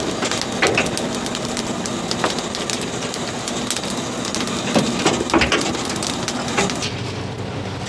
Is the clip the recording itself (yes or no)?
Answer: yes